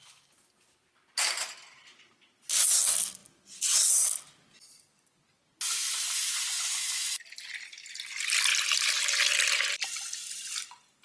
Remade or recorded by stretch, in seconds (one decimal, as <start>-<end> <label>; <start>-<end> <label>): 0.0-11.0 recorded